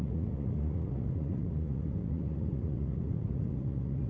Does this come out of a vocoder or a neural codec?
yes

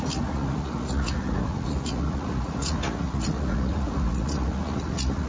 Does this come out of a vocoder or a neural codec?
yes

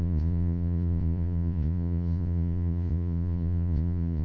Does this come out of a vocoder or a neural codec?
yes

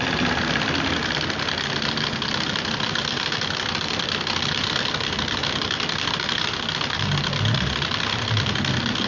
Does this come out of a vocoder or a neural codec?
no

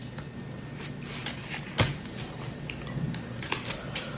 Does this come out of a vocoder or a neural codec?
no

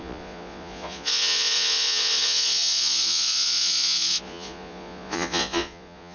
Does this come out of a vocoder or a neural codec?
yes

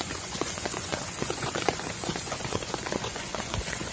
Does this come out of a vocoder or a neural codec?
yes